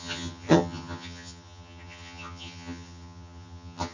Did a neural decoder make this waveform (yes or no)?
yes